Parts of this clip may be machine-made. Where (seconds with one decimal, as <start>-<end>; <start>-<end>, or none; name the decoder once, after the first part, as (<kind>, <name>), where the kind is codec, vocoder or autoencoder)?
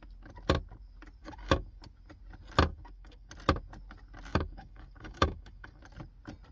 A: 1.2-1.8 (codec, DAC); 2.7-3.3; 4.3-5.8